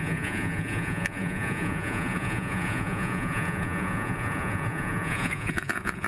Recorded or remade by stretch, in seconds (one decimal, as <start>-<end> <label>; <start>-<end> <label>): 0.0-6.1 remade